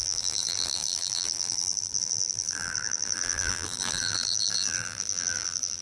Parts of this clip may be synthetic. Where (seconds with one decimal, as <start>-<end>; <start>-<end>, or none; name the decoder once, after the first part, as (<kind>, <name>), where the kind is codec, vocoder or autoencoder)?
0.0-5.8 (vocoder, BigVGAN v2)